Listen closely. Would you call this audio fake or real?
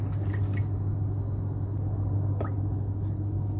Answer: real